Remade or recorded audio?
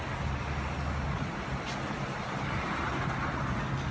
recorded